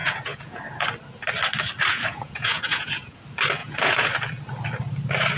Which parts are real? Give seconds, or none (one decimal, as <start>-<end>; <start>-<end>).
0.6-1.9; 3.2-3.6; 4.1-5.4